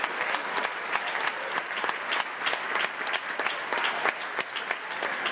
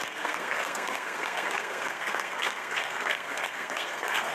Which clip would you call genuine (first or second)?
first